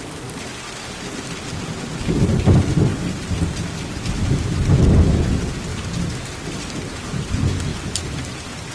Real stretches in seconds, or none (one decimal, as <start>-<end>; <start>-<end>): 0.0-8.7